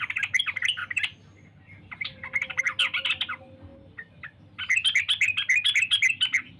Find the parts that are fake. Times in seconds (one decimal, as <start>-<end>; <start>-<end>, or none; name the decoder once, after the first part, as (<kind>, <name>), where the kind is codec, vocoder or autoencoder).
0.8-2.6 (vocoder, BigVGAN v2)